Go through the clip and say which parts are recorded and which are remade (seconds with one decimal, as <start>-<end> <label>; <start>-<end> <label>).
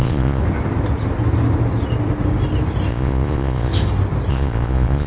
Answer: 0.0-0.4 remade; 0.4-2.9 recorded; 2.9-3.7 remade; 3.7-4.3 recorded; 4.3-5.1 remade